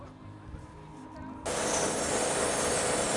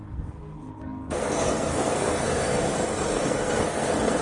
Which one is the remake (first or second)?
second